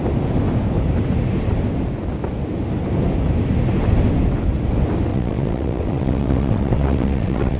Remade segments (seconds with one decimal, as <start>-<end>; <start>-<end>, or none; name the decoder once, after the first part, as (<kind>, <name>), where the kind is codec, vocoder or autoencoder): 5.1-7.6 (vocoder, WaveNeXt)